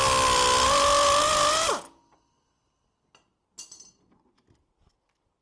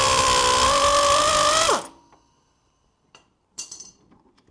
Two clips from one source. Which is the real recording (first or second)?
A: first